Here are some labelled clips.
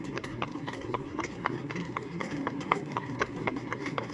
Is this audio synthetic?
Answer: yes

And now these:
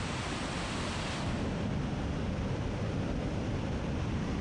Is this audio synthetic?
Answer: no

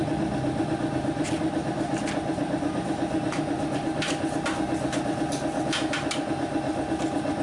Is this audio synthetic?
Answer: no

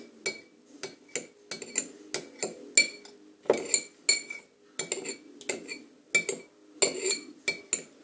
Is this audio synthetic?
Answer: no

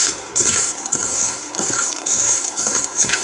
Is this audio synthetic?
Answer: yes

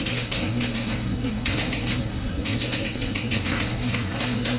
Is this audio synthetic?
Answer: yes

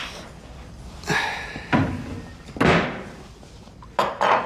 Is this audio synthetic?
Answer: no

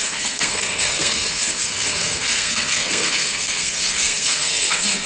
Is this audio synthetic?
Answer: yes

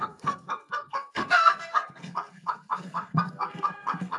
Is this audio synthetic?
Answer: yes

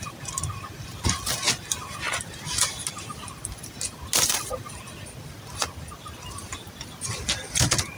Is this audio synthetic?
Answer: no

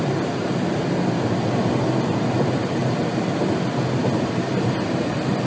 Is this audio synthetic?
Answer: no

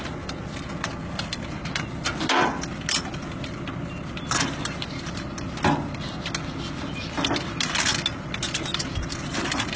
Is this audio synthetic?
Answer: no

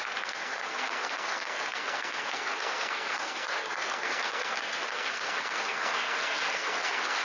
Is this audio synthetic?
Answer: yes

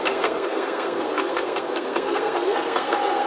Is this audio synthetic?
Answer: yes